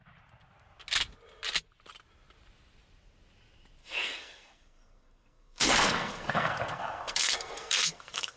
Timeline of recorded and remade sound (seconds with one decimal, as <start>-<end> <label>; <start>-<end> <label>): 0.0-3.8 recorded; 3.8-8.4 remade